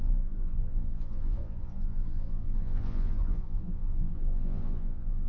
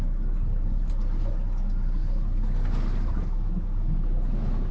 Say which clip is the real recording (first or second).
second